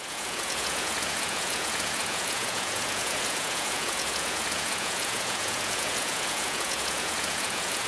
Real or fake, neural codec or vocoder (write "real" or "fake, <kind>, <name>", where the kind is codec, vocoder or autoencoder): fake, vocoder, Vocos